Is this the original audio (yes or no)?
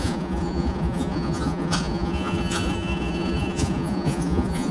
no